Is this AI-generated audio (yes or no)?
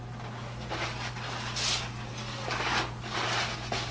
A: no